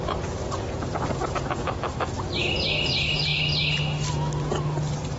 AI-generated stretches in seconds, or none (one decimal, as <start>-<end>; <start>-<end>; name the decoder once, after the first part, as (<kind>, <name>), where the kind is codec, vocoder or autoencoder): none